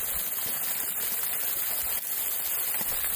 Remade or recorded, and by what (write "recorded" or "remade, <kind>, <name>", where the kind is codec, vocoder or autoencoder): recorded